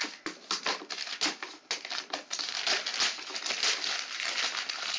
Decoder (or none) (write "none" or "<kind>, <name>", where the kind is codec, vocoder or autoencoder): none